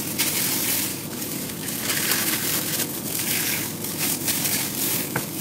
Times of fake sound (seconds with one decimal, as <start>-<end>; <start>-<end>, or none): 0.9-1.8; 2.2-5.4